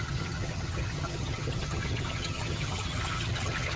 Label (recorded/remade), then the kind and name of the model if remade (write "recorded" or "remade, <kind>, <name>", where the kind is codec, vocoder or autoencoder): remade, vocoder, HiFi-GAN